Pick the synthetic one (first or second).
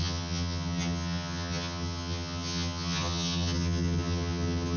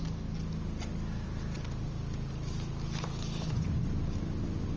first